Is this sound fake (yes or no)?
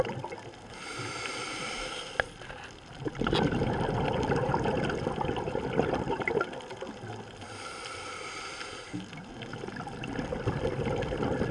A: no